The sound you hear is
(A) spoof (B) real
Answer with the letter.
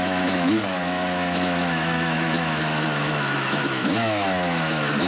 A